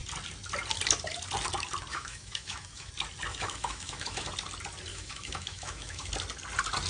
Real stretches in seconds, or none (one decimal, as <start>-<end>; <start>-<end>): 0.0-1.9; 2.9-3.3; 4.3-4.9; 6.1-6.9